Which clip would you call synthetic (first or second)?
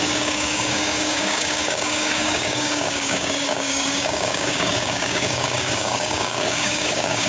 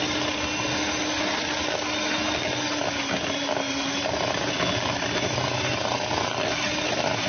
first